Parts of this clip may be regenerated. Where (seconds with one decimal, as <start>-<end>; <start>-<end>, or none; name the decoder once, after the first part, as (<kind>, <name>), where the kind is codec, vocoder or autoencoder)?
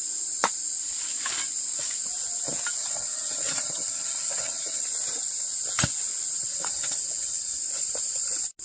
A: 2.8-4.8 (vocoder, WaveNeXt); 6.5-7.6